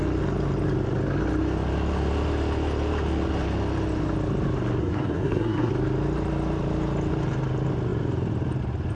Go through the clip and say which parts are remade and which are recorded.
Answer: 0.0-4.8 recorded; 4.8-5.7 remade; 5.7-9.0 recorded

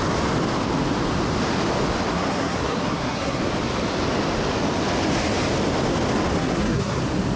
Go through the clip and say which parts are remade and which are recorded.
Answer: 0.0-2.1 recorded; 2.1-3.4 remade; 3.4-6.4 recorded; 6.4-7.0 remade; 7.0-7.4 recorded

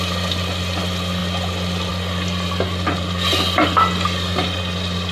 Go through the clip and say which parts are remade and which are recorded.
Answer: 0.0-5.1 recorded

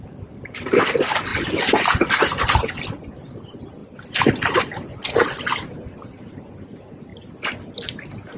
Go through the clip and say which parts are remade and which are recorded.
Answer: 0.0-8.4 recorded